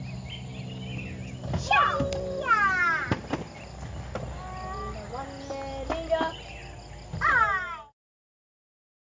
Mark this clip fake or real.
real